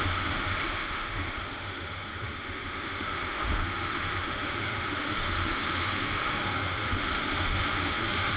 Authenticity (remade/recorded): remade